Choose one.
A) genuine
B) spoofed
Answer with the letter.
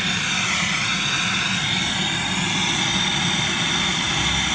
A